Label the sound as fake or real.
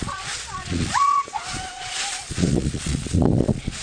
fake